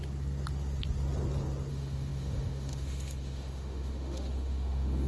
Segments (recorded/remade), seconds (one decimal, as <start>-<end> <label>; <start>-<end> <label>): 0.0-1.7 recorded; 1.7-5.1 remade